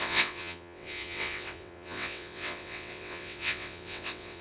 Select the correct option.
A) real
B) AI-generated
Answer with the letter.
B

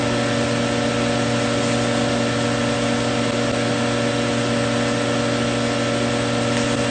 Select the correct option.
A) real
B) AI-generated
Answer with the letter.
A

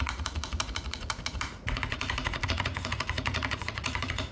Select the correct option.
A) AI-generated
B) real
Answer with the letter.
A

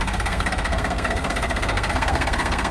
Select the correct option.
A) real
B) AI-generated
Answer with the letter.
B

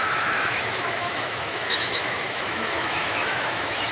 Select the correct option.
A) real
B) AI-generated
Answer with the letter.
B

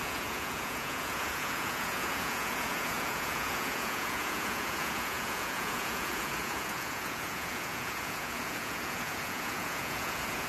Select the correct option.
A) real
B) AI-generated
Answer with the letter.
B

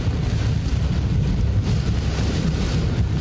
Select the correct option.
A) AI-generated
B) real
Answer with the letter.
B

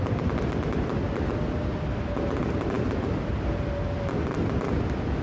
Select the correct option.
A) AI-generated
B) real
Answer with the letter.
B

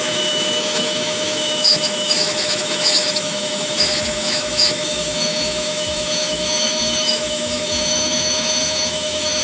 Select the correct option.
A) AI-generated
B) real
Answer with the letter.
A